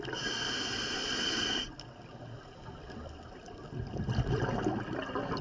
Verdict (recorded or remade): recorded